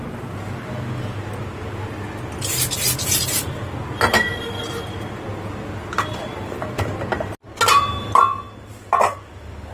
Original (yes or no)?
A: yes